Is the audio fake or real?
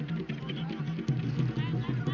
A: real